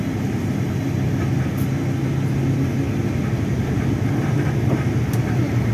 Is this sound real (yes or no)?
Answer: yes